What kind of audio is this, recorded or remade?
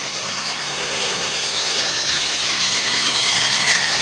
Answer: remade